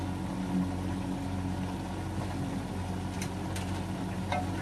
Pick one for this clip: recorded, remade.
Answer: recorded